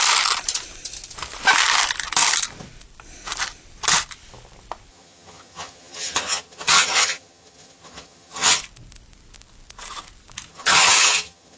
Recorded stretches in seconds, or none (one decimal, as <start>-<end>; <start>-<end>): 0.0-4.9; 8.6-10.5